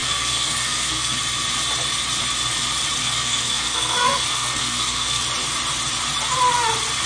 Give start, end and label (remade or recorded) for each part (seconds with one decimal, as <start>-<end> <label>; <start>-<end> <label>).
0.0-1.2 remade; 1.2-3.0 recorded; 3.0-5.2 remade; 5.2-7.1 recorded